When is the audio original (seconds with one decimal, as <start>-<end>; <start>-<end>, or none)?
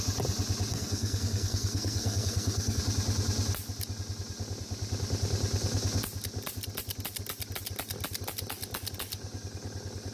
0.0-0.7; 2.8-10.1